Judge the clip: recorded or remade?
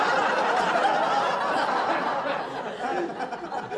recorded